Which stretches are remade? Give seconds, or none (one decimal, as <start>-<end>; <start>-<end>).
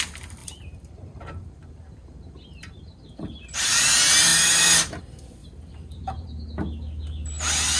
0.4-2.8; 5.4-6.4